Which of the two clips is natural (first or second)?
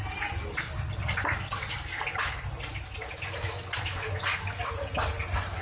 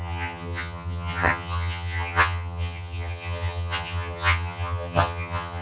first